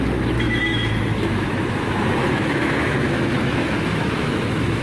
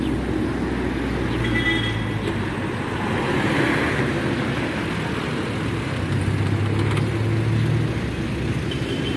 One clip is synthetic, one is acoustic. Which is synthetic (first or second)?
first